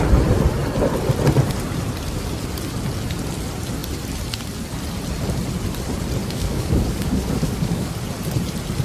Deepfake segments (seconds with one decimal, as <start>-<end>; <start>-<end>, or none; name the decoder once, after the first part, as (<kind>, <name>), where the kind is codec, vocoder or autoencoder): 6.2-7.9 (codec, DAC)